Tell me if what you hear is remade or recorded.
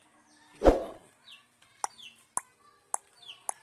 recorded